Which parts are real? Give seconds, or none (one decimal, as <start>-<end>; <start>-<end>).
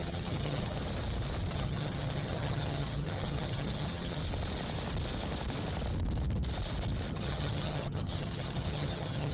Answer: 0.8-1.5; 4.2-7.1